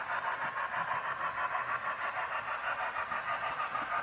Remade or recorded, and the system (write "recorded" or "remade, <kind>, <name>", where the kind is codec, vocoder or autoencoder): recorded